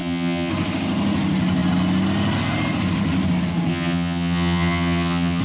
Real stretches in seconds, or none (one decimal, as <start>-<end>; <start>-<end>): 0.5-3.7